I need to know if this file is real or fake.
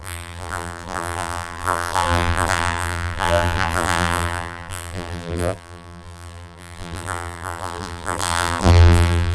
fake